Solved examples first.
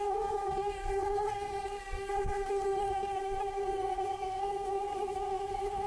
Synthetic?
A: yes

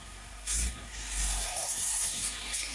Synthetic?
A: yes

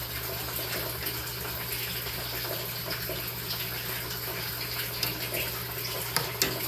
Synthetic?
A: no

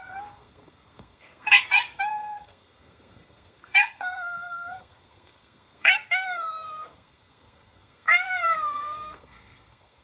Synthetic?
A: yes